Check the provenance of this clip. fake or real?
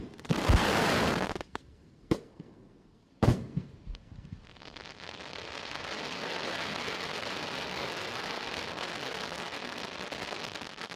fake